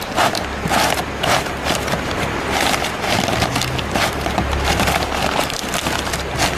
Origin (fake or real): real